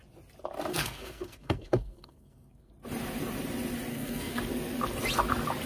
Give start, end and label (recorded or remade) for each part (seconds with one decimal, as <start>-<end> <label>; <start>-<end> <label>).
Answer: 0.0-0.7 recorded; 0.7-2.7 remade; 2.7-3.9 recorded; 3.9-4.4 remade; 4.4-5.7 recorded